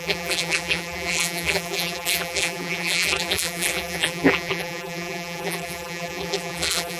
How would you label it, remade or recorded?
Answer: remade